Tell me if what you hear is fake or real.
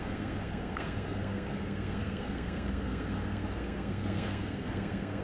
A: fake